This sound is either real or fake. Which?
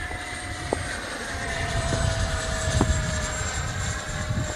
fake